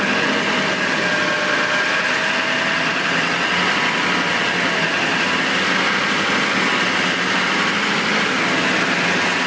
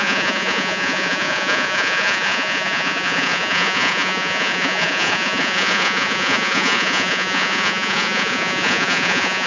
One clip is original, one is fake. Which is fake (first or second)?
second